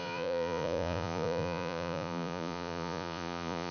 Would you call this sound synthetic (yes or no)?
yes